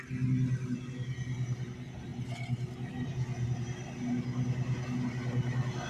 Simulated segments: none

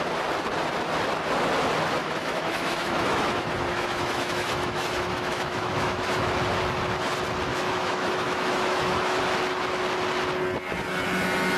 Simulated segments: 2.0-6.3 (autoencoder, DAC-VAE); 7.5-9.2

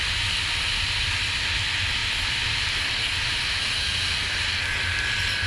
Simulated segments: none